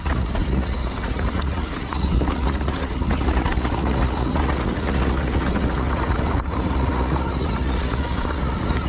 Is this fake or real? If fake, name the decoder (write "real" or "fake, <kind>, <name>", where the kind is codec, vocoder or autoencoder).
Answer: fake, vocoder, Vocos